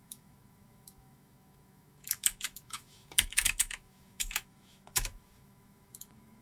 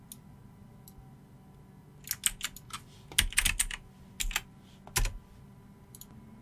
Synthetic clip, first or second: first